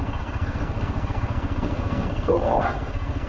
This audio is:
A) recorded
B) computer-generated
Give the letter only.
B